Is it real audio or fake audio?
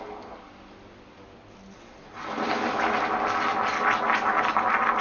real